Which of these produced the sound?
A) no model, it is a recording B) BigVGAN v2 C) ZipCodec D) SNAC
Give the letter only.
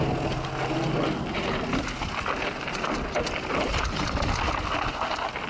A